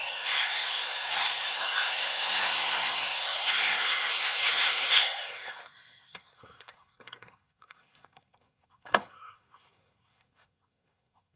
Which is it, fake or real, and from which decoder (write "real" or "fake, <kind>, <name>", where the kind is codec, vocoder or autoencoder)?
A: fake, codec, SNAC